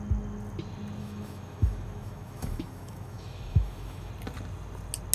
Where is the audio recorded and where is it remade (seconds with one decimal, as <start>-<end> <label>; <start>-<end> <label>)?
0.0-1.0 recorded; 1.0-4.1 remade; 4.1-5.1 recorded